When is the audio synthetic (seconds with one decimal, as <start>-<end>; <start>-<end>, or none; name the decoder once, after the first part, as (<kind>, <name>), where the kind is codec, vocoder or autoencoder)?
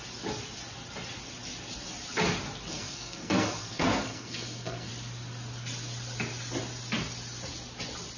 2.7-4.9 (codec, SNAC)